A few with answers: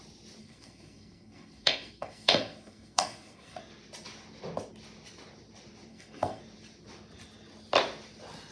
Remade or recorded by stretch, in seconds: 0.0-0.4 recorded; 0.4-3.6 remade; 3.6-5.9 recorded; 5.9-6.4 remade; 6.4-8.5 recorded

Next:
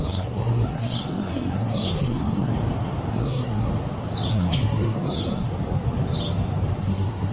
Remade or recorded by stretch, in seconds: 0.0-2.5 remade; 2.5-3.1 recorded; 3.1-3.7 remade; 3.7-4.3 recorded; 4.3-5.5 remade; 5.5-6.8 recorded; 6.8-7.3 remade

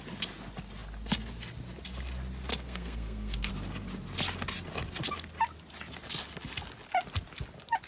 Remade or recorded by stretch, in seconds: 0.0-2.5 recorded; 2.5-3.5 remade; 3.5-7.9 recorded

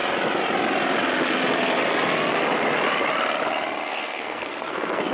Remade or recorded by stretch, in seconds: 0.0-3.8 recorded; 3.8-5.1 remade

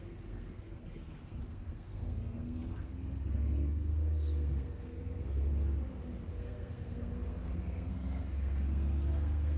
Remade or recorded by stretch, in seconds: 0.0-5.5 remade; 5.5-6.3 recorded; 6.3-9.6 remade